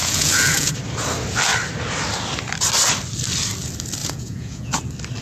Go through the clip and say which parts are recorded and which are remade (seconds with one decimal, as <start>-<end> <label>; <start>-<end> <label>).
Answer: 0.0-0.7 remade; 0.7-4.0 recorded; 4.0-4.8 remade; 4.8-5.2 recorded